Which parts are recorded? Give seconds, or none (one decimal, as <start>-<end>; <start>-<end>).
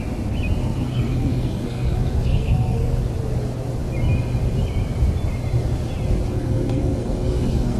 0.0-0.6; 3.0-6.3